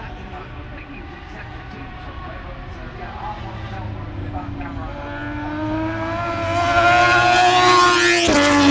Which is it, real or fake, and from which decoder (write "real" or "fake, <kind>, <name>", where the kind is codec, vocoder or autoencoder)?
real